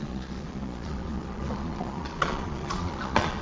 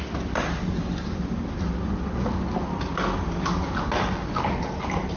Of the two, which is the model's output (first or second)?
first